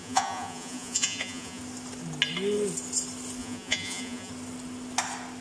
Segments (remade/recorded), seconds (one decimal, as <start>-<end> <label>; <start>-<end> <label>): 0.0-1.6 remade; 1.6-3.4 recorded; 3.4-4.3 remade; 4.3-5.4 recorded